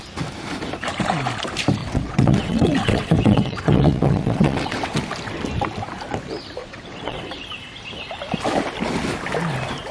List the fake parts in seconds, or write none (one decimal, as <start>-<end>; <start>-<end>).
1.8-5.0; 6.6-7.4